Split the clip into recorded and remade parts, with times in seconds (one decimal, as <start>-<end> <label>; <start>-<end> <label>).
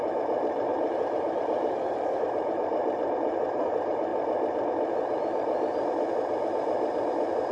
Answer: 0.0-4.1 remade; 4.1-7.5 recorded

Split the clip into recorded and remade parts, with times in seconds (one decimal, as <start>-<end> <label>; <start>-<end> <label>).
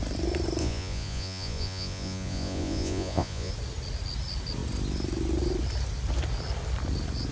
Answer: 0.0-0.6 recorded; 0.6-3.5 remade; 3.5-7.3 recorded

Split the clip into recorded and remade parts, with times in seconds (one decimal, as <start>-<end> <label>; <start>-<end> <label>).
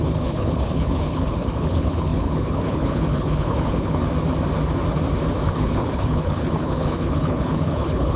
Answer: 0.0-4.0 remade; 4.0-5.5 recorded; 5.5-8.2 remade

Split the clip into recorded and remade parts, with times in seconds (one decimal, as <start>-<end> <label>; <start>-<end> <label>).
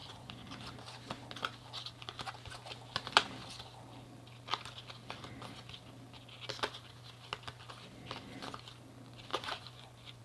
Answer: 0.0-0.5 remade; 0.5-9.3 recorded; 9.3-10.2 remade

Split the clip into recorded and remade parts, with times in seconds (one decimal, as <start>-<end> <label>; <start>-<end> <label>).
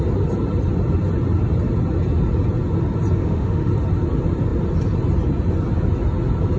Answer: 0.0-3.2 recorded; 3.2-3.7 remade; 3.7-6.6 recorded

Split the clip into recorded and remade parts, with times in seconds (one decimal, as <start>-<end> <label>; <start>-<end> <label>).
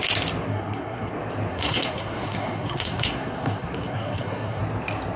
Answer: 0.0-0.4 recorded; 0.4-1.1 remade; 1.1-1.5 recorded; 1.5-4.6 remade; 4.6-5.2 recorded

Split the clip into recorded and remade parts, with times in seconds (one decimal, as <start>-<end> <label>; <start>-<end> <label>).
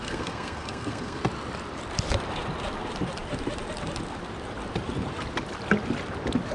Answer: 0.0-1.2 remade; 1.2-6.5 recorded